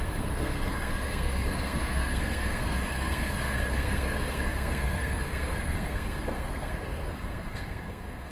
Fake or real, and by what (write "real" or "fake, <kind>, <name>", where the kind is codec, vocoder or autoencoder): fake, codec, SNAC